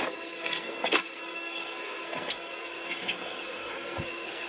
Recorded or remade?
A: remade